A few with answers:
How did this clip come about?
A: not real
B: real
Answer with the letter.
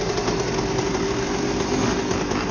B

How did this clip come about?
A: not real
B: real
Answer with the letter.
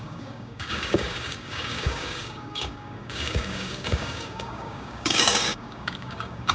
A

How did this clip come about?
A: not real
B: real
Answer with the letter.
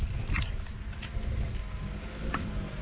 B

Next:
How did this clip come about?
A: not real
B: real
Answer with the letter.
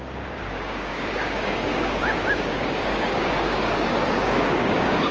A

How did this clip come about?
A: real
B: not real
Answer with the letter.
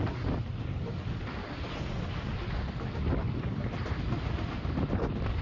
A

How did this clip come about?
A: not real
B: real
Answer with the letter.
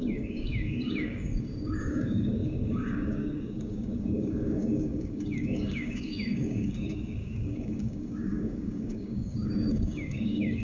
A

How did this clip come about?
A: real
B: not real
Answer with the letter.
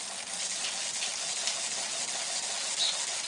A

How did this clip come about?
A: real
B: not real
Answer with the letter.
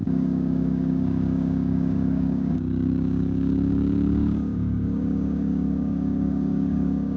B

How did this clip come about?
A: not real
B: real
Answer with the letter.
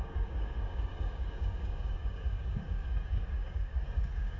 A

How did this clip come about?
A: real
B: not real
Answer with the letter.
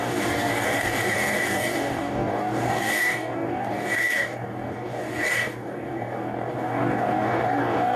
B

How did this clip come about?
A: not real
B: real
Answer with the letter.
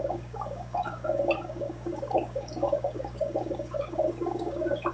A